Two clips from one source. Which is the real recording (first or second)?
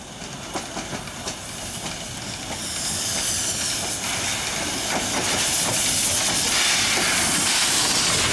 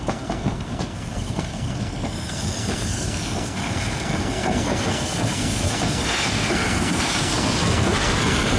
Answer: first